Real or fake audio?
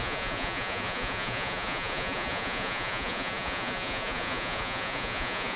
fake